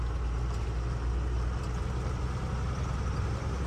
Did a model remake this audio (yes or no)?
no